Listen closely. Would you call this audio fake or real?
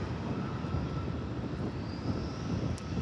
real